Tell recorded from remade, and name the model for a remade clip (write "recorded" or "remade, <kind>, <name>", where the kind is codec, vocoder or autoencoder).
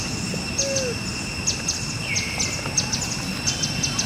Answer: recorded